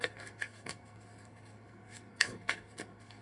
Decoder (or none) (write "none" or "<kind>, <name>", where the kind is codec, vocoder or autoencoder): codec, SNAC